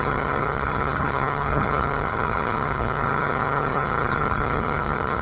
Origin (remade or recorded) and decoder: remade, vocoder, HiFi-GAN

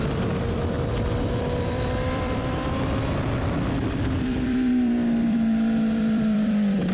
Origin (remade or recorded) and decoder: remade, vocoder, BigVGAN v2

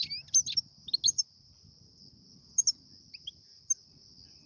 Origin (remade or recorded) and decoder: recorded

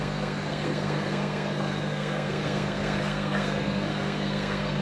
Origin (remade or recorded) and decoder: remade, codec, SNAC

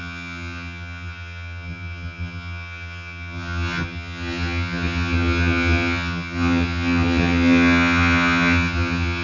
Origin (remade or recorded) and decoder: remade, vocoder, HiFi-GAN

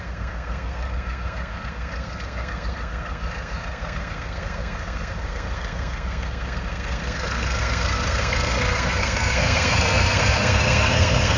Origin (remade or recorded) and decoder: remade, codec, SNAC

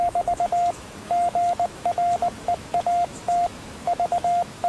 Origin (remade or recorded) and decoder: remade, autoencoder, DAC-VAE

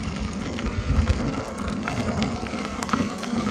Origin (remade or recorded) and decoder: remade, codec, SNAC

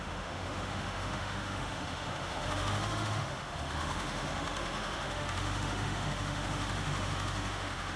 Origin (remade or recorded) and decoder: remade, autoencoder, DAC-VAE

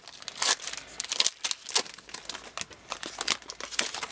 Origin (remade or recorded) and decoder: recorded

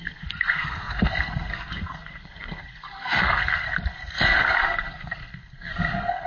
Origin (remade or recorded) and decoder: remade, codec, SNAC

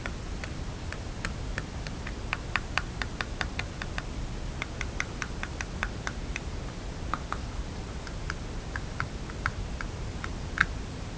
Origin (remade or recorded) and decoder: recorded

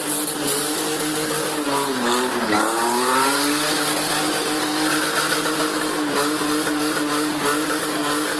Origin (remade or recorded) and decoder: recorded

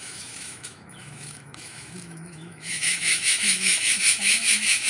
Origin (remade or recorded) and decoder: remade, autoencoder, DAC-VAE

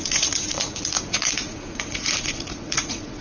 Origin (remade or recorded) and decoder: remade, vocoder, Vocos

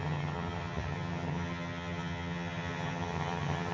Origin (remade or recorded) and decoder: remade, vocoder, HiFi-GAN